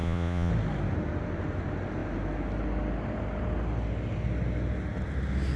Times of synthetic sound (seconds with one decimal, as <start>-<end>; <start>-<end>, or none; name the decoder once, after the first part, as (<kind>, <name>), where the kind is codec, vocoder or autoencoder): 0.0-0.5 (vocoder, Vocos)